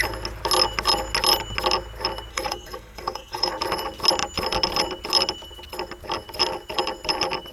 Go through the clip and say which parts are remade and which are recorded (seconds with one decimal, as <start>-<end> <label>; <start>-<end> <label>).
0.0-2.3 recorded; 2.3-3.5 remade; 3.5-7.5 recorded